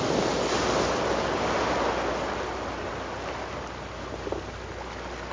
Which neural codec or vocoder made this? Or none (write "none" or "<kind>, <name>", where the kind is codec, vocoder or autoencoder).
none